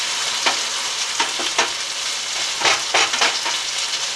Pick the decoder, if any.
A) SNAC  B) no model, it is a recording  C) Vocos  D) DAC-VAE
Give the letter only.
B